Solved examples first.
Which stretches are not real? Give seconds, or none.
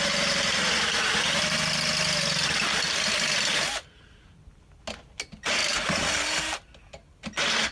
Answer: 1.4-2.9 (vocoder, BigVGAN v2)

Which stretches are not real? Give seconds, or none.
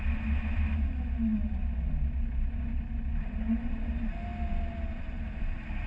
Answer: 0.0-1.4 (vocoder, BigVGAN v2); 3.1-4.3; 5.0-5.9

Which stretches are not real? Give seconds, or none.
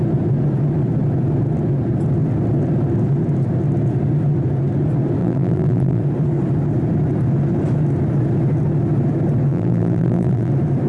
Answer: 5.2-6.0 (vocoder, BigVGAN v2); 9.5-10.5